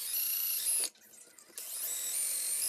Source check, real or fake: real